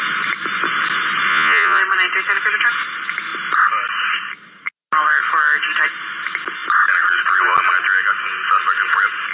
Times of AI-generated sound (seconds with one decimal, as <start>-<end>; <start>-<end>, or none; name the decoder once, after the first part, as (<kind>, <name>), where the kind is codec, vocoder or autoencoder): 1.3-1.8 (vocoder, Vocos)